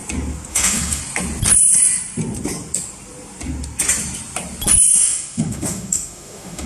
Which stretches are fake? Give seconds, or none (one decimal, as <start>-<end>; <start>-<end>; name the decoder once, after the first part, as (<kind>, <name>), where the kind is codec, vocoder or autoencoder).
0.5-1.0 (autoencoder, DAC-VAE); 4.9-6.7